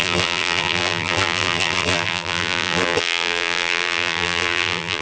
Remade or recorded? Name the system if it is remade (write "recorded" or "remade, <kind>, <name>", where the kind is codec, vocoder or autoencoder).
remade, vocoder, BigVGAN v2